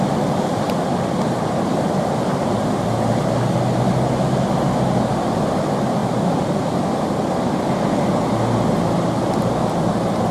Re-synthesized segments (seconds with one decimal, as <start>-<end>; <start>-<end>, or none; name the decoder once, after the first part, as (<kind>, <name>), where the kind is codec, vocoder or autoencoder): none